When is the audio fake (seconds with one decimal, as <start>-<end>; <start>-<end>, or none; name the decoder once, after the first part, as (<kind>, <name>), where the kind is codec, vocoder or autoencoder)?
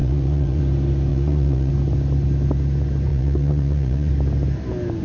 0.0-0.6 (vocoder, Vocos); 1.1-1.7; 3.1-4.1